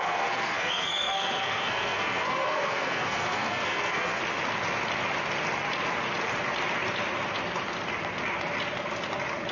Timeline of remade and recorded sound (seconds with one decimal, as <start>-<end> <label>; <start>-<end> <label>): 0.0-4.2 remade; 4.2-9.5 recorded

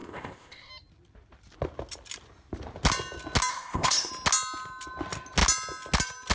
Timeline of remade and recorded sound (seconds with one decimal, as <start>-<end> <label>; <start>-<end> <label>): 0.0-0.7 remade; 0.7-3.5 recorded; 3.5-4.1 remade; 4.1-6.3 recorded

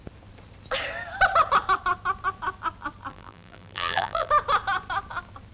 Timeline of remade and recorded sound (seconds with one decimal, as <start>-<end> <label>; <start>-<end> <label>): 0.0-3.1 recorded; 3.1-4.3 remade; 4.3-5.5 recorded

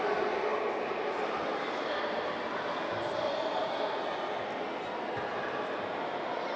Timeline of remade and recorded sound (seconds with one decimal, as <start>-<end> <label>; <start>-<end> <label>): 0.0-6.6 recorded

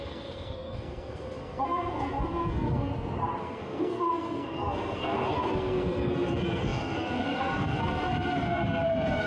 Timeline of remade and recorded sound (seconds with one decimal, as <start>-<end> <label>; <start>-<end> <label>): 0.0-2.9 remade; 2.9-3.4 recorded; 3.4-9.3 remade